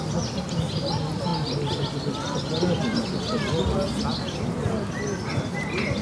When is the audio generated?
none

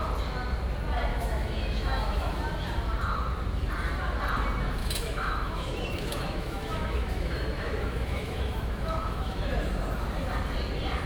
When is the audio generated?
1.1-2.4 (autoencoder, DAC-VAE); 4.8-9.5

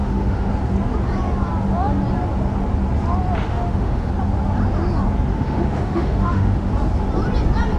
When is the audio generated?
0.0-0.5 (autoencoder, DAC-VAE); 3.5-4.1; 5.3-6.7

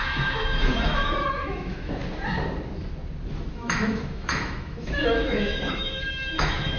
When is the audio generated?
0.0-2.0 (autoencoder, DAC-VAE); 3.5-6.8

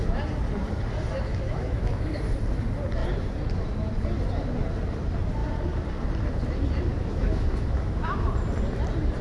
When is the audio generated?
1.3-2.1 (autoencoder, DAC-VAE); 7.0-8.3

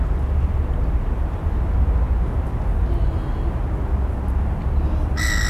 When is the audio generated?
none